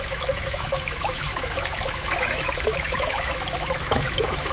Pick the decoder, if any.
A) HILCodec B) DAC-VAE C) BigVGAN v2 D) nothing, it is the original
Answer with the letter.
B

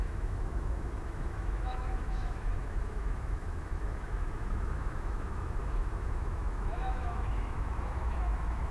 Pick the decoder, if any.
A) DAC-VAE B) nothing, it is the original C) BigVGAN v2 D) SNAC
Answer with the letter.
A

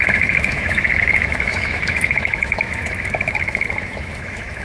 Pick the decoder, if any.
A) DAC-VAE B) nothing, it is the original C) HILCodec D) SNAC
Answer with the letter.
A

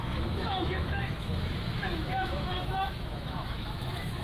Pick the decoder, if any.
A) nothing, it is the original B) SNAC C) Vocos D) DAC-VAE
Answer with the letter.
D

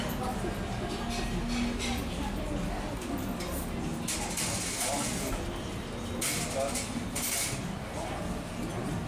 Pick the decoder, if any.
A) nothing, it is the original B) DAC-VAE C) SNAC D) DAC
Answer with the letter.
A